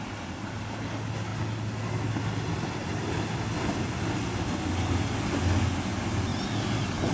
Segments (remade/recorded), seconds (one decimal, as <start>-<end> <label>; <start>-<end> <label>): 0.0-7.1 recorded